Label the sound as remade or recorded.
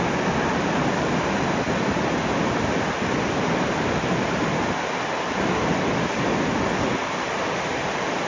recorded